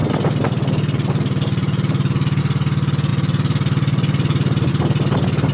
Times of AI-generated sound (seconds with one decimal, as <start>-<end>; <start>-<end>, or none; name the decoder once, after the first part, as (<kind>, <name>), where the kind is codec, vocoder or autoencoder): 0.0-2.4 (vocoder, BigVGAN v2); 3.1-4.7